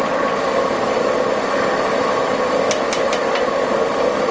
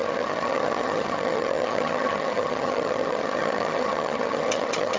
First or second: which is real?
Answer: first